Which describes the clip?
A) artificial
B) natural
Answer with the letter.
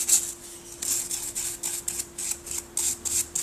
B